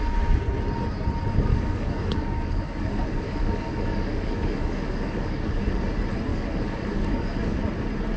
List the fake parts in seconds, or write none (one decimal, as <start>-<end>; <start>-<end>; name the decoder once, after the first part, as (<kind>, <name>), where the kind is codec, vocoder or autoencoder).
1.5-5.6 (codec, DAC); 6.3-7.6